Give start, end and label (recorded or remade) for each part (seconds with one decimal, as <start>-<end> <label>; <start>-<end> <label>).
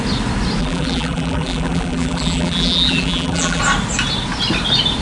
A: 0.0-0.6 recorded; 0.6-3.6 remade; 3.6-5.0 recorded